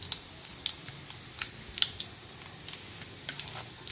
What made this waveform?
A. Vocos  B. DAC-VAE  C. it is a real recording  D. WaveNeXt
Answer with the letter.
C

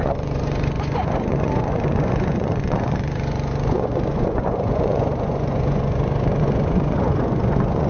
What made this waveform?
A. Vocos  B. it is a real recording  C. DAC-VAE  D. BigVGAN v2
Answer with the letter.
A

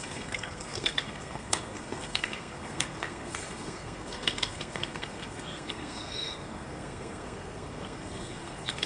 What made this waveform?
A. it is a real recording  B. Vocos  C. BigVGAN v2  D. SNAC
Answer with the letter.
D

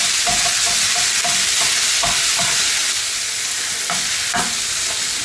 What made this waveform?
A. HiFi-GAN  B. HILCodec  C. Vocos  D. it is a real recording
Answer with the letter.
D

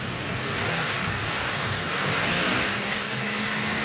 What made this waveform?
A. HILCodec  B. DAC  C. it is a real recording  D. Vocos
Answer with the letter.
B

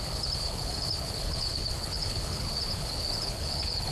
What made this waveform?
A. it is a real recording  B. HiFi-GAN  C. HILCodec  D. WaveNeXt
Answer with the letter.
C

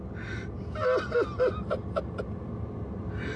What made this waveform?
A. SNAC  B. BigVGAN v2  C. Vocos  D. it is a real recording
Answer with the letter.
D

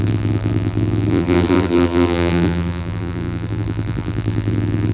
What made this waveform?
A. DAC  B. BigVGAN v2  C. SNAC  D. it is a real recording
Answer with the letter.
B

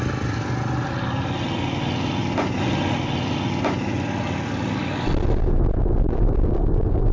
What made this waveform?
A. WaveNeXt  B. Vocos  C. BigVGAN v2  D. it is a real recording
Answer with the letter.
D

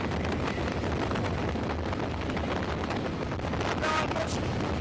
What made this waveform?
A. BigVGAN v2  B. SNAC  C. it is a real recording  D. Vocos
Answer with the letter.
C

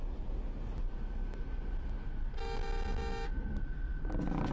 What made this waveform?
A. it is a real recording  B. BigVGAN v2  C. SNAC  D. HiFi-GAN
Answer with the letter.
A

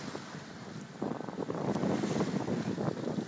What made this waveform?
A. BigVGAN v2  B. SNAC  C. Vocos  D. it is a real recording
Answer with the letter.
D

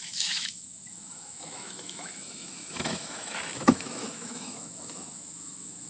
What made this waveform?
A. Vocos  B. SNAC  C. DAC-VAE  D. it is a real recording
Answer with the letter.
C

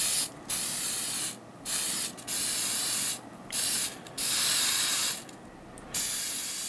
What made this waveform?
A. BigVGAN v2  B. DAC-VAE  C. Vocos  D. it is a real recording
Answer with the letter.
D